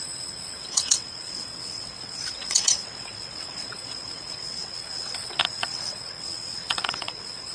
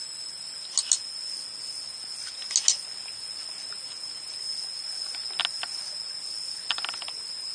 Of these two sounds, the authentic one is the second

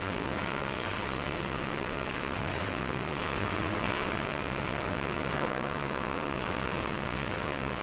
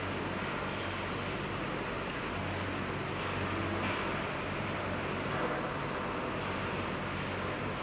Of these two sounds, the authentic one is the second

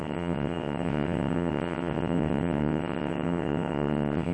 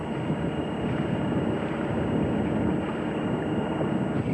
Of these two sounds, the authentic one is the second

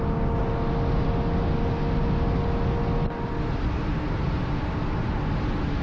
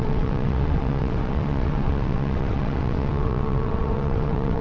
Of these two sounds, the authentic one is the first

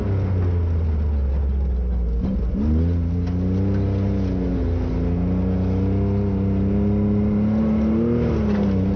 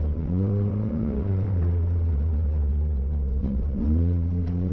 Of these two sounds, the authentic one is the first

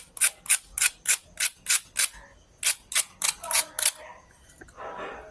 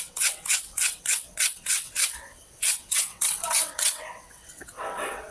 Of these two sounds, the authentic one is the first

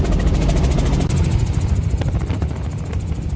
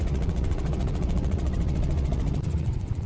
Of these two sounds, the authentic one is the first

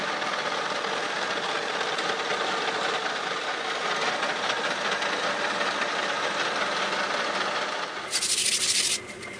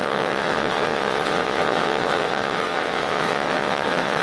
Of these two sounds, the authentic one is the first